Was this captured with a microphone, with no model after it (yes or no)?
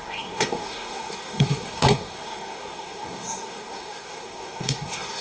no